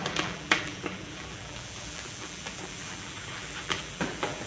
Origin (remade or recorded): remade